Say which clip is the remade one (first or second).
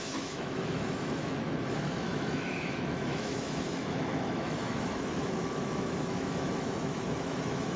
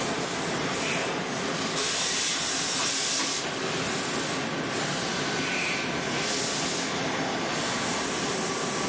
first